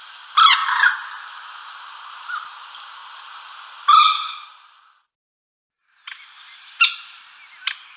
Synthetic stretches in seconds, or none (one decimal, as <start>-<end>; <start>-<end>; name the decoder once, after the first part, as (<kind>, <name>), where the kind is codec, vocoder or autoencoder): none